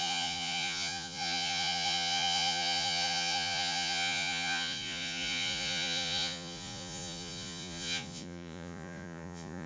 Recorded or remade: remade